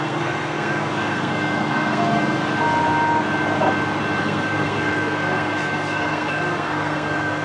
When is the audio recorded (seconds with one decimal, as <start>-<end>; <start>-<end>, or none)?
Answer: 2.4-4.2

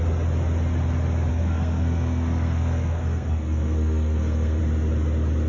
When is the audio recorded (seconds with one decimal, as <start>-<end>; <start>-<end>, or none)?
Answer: 0.0-1.3; 4.6-5.5

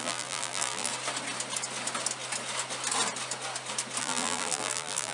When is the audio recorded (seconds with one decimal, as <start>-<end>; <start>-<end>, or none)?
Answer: 0.9-4.0

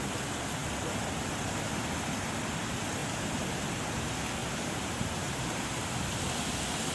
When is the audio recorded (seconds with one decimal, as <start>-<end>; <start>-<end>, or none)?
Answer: 0.0-3.0; 3.6-4.4; 5.9-6.9

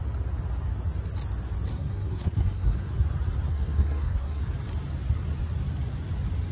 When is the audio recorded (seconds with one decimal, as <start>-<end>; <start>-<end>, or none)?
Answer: 0.0-1.7; 2.9-3.5; 4.4-6.5